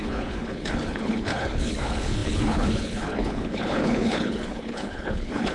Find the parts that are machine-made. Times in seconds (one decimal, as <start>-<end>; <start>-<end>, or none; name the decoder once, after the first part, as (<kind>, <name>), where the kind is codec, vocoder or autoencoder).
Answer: 0.0-5.5 (codec, HILCodec)